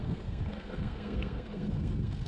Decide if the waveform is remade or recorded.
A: remade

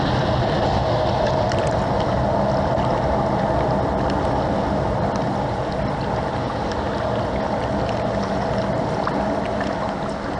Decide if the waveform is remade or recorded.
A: recorded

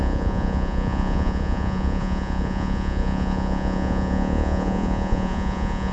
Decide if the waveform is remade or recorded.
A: remade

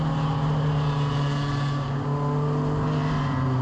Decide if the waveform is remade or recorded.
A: recorded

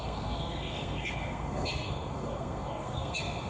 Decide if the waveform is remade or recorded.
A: remade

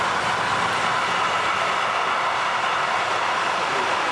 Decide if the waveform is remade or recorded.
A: recorded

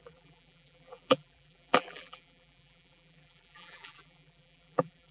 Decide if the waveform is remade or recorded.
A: remade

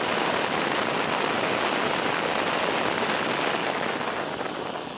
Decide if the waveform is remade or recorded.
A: recorded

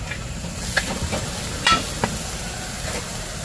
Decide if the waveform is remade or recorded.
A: recorded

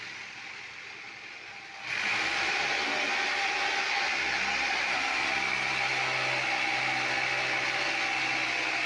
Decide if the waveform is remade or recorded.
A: recorded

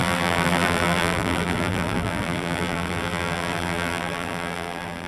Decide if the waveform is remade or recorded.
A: remade